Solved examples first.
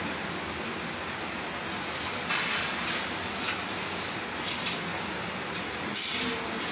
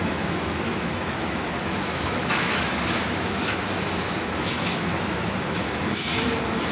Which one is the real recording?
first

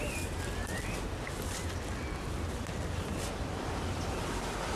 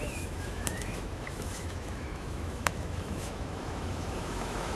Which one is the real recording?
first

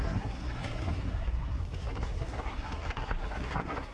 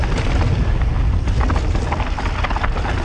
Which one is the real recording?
second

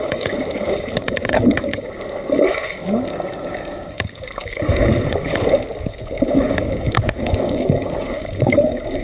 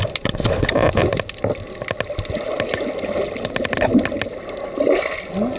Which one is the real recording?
second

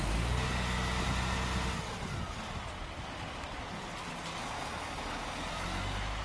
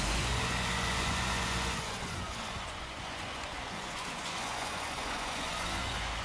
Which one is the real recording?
first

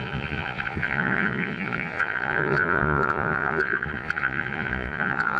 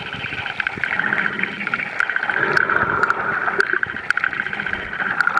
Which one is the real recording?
second